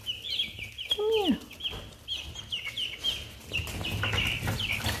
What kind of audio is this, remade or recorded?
recorded